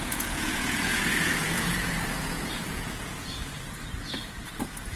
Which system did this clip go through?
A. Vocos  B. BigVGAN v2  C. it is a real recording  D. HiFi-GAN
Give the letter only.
A